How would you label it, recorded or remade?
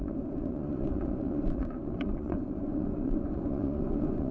remade